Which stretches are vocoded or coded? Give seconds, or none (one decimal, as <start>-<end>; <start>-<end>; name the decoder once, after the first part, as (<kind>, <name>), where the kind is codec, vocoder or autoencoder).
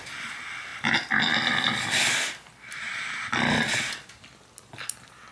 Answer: none